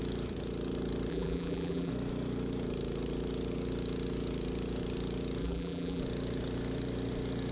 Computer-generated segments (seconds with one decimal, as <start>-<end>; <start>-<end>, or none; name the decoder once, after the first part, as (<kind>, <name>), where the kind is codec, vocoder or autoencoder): 1.1-1.9 (vocoder, BigVGAN v2); 5.4-6.0